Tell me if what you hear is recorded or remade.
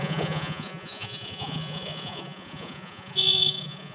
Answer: remade